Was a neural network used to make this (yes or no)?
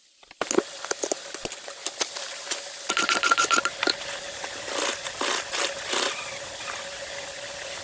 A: no